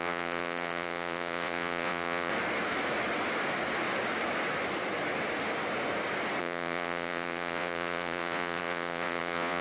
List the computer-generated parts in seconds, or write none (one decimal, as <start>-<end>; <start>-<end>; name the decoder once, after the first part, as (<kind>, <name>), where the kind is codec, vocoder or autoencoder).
0.0-2.3 (vocoder, Vocos); 6.4-9.6

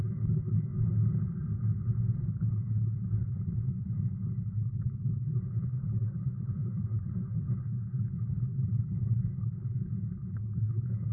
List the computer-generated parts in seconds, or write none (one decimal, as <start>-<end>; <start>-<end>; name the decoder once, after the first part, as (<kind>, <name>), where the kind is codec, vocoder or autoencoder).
0.0-0.7 (codec, HILCodec); 2.3-11.1

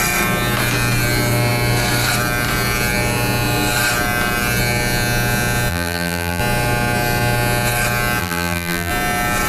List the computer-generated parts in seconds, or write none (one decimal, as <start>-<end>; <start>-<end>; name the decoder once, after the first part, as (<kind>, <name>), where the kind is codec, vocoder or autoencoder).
5.7-6.4 (vocoder, BigVGAN v2); 8.2-8.9

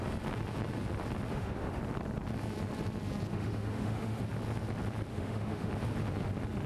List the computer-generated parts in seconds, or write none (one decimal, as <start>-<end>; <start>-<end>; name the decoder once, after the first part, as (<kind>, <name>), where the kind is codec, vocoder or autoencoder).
1.3-1.8 (autoencoder, DAC-VAE); 3.3-4.2; 5.1-5.7

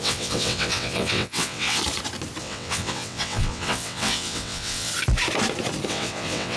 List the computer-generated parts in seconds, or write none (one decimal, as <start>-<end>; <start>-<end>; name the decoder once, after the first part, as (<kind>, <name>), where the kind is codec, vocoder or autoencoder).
0.0-1.8 (vocoder, WaveNeXt); 2.4-4.9; 5.9-6.6

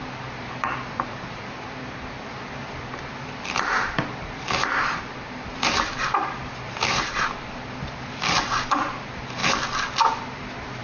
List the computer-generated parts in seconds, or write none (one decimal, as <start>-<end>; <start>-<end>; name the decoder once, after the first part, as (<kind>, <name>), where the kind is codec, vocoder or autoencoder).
0.0-9.4 (vocoder, BigVGAN v2)

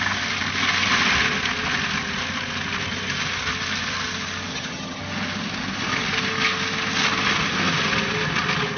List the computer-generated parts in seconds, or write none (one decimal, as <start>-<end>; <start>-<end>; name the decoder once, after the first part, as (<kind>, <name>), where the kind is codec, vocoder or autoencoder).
4.5-5.0 (vocoder, HiFi-GAN)

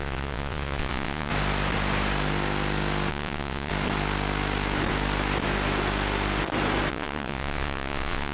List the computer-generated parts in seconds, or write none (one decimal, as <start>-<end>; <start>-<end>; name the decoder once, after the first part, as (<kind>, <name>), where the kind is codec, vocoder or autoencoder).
0.0-1.3 (vocoder, WaveNeXt); 3.1-3.7; 6.9-8.3